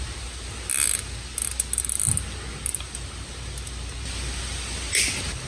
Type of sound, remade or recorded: recorded